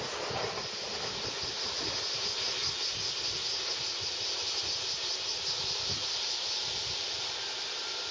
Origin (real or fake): real